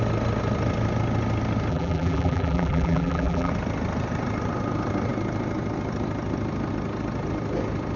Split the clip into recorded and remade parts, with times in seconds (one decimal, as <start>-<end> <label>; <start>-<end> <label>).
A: 0.0-1.7 recorded; 1.7-3.5 remade; 3.5-8.0 recorded